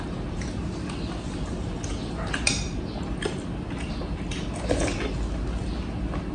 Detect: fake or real real